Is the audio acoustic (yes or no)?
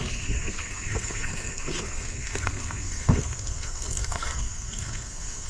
no